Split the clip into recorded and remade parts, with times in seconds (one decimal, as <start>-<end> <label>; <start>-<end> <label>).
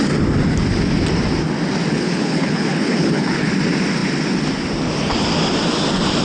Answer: 0.0-1.9 recorded; 1.9-3.5 remade; 3.5-6.2 recorded